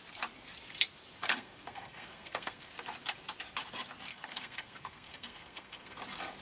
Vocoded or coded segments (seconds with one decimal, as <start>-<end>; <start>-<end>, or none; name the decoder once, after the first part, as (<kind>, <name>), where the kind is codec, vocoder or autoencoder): 1.2-2.7 (codec, SNAC); 4.1-6.0